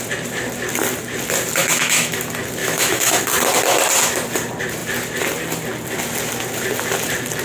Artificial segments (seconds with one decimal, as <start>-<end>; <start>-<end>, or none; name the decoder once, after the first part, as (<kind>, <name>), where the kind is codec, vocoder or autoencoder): 1.6-2.1 (autoencoder, DAC-VAE); 2.6-3.2